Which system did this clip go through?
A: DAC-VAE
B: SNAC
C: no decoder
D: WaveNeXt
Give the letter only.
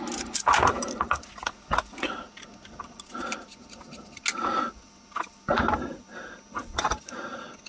C